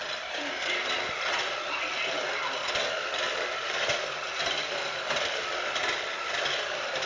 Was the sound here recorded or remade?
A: recorded